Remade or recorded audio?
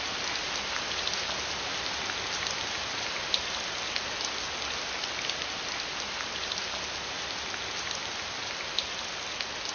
recorded